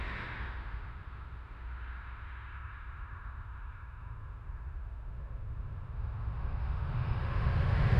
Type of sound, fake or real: fake